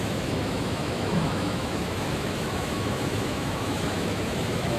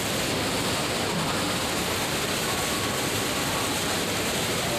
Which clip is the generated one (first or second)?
first